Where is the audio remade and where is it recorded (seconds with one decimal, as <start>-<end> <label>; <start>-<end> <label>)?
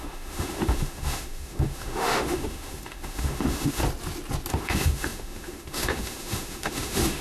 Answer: 0.0-3.8 remade; 3.8-4.5 recorded; 4.5-7.2 remade